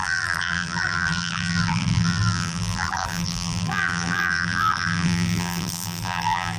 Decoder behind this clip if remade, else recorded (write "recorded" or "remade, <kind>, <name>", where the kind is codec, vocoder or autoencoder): remade, vocoder, BigVGAN v2